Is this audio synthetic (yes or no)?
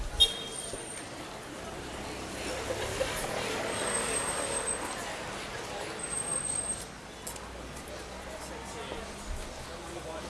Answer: no